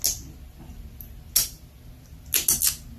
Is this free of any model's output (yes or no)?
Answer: yes